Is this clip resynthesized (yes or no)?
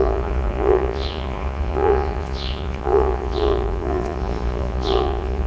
yes